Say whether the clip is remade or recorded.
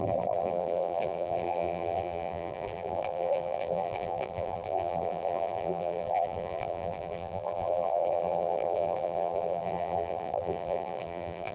remade